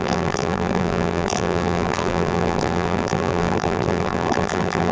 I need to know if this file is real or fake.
fake